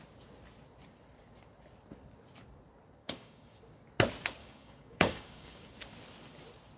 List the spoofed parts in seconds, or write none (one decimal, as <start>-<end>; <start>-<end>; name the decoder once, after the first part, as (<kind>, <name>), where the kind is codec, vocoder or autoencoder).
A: 3.0-3.6 (codec, DAC); 4.4-5.7